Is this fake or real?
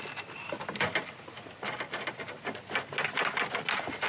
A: real